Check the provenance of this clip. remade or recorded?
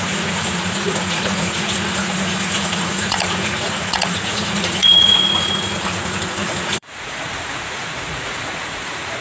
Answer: remade